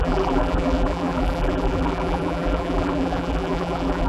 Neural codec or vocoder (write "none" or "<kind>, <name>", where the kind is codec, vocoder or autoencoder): vocoder, BigVGAN v2